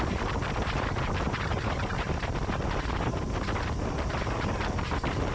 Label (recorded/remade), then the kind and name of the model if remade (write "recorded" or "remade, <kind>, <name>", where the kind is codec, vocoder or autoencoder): recorded